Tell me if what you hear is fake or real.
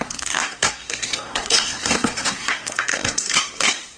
fake